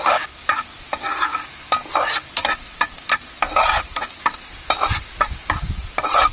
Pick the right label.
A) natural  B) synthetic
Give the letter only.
A